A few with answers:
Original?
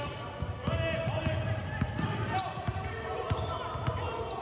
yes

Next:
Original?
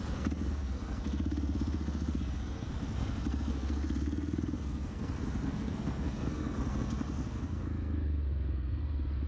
no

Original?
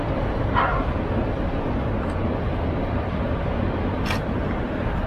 yes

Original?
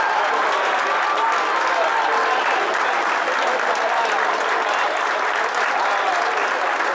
yes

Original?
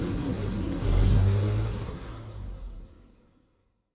no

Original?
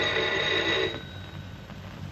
yes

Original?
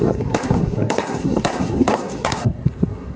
no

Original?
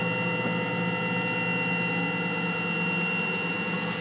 yes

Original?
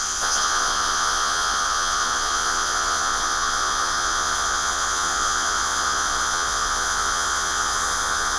no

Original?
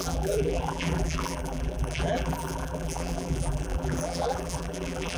no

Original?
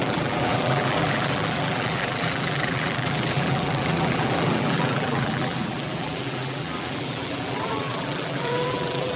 no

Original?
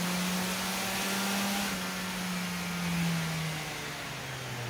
yes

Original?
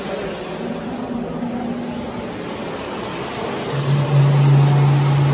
yes